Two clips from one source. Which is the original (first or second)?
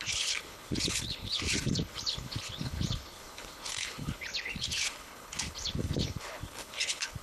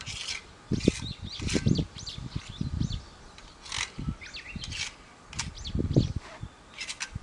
second